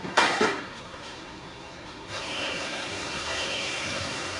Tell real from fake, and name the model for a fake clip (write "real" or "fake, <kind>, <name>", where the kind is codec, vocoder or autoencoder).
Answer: fake, codec, SNAC